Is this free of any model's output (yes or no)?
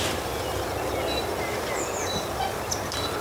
yes